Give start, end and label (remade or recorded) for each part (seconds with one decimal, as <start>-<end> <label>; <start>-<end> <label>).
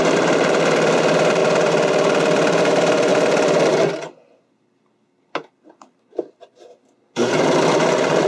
0.0-1.4 remade; 1.4-2.6 recorded; 2.6-3.1 remade; 3.1-7.0 recorded; 7.0-8.3 remade